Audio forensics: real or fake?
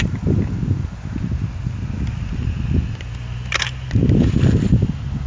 real